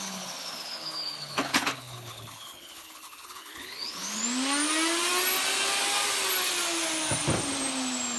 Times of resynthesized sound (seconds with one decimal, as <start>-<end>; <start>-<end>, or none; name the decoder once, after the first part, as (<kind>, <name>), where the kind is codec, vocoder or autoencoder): 0.0-4.2 (codec, HILCodec)